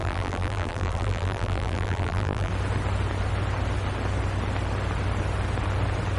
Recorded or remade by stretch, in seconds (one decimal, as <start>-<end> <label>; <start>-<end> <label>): 0.0-2.5 remade; 2.5-6.2 recorded